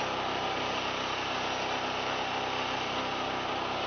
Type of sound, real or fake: real